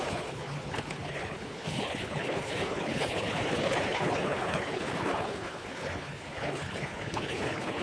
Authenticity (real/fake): fake